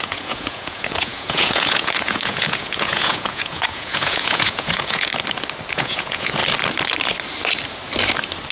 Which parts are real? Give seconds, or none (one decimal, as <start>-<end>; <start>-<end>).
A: 5.1-5.7; 6.4-8.5